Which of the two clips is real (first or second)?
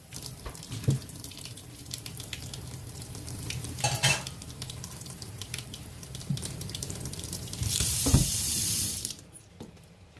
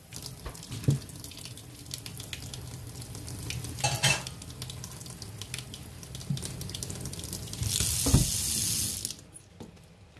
second